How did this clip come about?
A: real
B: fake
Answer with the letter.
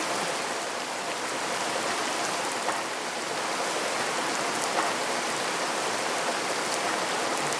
A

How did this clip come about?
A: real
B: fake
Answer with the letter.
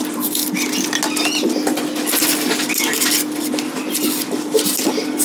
A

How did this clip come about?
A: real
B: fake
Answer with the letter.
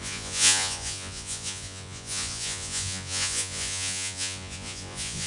B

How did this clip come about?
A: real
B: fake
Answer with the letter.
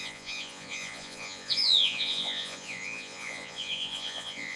B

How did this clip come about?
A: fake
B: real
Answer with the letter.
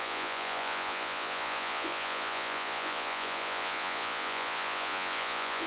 A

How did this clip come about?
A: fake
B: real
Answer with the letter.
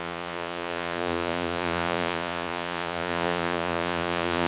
A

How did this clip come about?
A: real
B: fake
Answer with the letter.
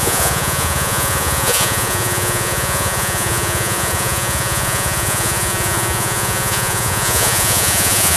B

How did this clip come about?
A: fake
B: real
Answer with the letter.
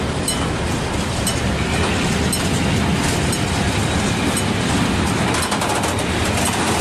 B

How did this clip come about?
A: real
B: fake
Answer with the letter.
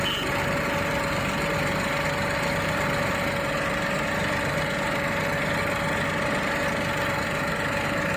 A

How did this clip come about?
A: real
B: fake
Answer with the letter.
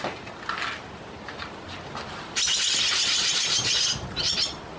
A